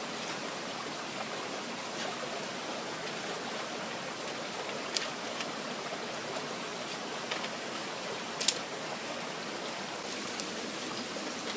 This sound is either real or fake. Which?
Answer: real